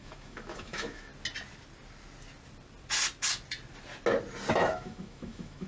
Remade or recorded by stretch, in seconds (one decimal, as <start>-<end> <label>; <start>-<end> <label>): 0.0-1.1 remade; 1.1-4.5 recorded; 4.5-5.7 remade